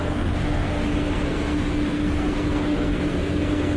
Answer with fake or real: fake